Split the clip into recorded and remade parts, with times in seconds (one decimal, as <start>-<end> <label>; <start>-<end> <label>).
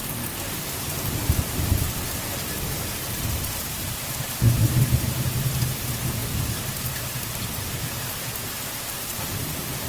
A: 0.0-0.5 recorded; 0.5-6.2 remade; 6.2-7.0 recorded; 7.0-9.9 remade